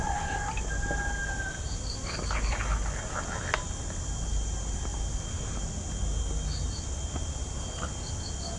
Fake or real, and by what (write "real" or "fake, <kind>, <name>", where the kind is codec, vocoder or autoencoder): real